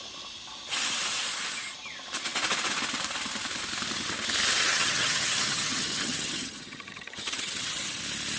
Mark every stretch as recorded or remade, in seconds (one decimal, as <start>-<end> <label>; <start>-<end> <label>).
0.0-4.6 recorded; 4.6-8.0 remade; 8.0-8.4 recorded